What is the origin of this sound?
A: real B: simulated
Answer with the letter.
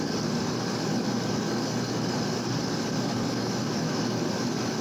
B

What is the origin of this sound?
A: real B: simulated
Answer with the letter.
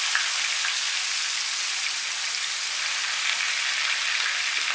A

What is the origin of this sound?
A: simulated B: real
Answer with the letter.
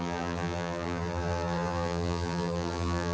A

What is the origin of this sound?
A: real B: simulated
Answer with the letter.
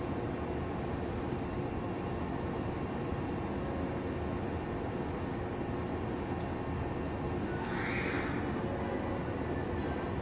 A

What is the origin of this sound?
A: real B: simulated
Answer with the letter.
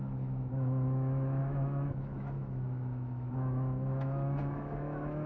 B